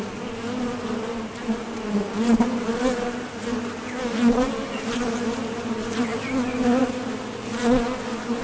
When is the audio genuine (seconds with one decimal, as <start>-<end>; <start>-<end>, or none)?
0.0-8.4